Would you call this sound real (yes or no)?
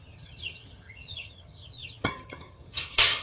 no